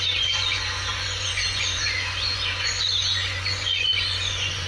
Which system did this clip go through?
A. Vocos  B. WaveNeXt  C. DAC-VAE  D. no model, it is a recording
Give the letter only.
A